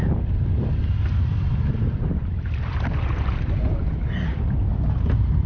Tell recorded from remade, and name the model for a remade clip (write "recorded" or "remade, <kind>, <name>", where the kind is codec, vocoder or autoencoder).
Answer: remade, vocoder, BigVGAN v2